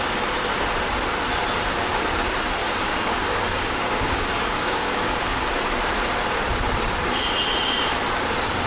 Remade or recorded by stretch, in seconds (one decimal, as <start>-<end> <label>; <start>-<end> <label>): 0.0-2.6 recorded; 2.6-5.5 remade; 5.5-8.7 recorded

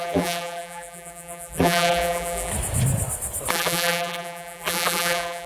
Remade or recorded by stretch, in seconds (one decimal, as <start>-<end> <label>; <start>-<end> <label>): 0.0-2.5 remade; 2.5-3.5 recorded; 3.5-5.5 remade

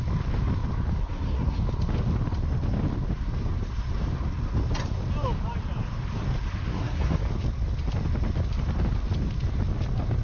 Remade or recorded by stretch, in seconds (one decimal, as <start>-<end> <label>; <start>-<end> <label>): 0.0-1.0 recorded; 1.0-1.6 remade; 1.6-6.7 recorded; 6.7-7.2 remade; 7.2-10.2 recorded

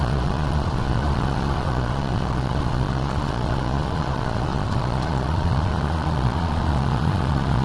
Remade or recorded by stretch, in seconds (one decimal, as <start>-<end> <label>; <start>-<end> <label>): 0.0-7.6 remade

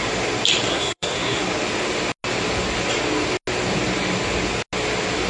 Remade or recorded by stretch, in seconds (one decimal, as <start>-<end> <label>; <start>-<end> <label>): 0.0-0.7 recorded; 0.7-1.4 remade; 1.4-5.3 recorded

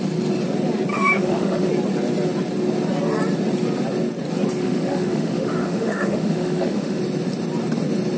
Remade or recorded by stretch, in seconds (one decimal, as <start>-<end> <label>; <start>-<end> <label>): 0.0-0.9 recorded; 0.9-1.7 remade; 1.7-4.6 recorded; 4.6-7.0 remade; 7.0-8.2 recorded

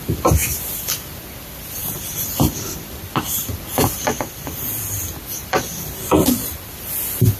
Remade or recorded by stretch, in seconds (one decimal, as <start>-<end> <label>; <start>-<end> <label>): 0.0-0.4 recorded; 0.4-4.8 remade; 4.8-5.4 recorded; 5.4-6.7 remade; 6.7-7.4 recorded

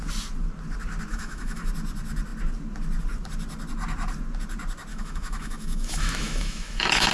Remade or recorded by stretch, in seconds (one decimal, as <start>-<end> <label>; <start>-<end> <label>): 0.0-1.1 recorded; 1.1-1.7 remade; 1.7-4.9 recorded; 4.9-7.1 remade